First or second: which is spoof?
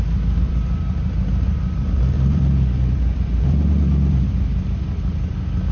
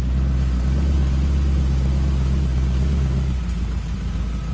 first